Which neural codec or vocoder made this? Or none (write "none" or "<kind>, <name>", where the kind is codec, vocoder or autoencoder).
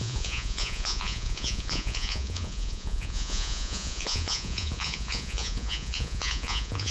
vocoder, Vocos